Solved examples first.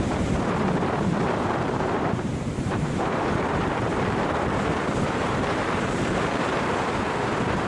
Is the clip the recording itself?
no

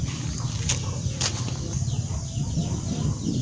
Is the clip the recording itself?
yes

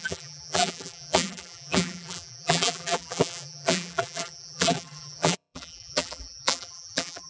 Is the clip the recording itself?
no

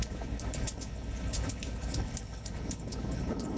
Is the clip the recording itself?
no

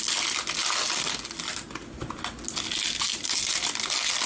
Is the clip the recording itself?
yes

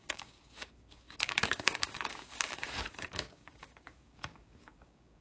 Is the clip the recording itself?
no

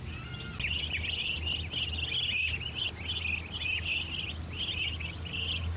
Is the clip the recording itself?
yes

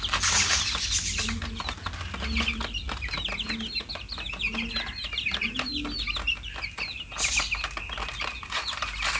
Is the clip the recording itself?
yes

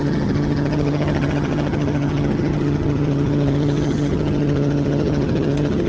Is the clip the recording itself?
no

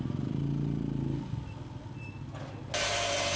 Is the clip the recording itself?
yes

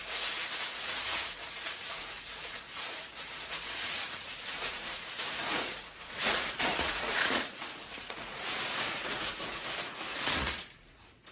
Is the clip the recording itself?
no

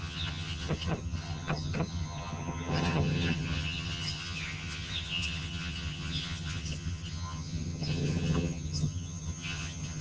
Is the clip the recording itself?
no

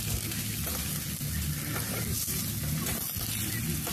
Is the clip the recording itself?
yes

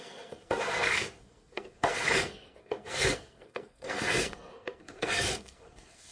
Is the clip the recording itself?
no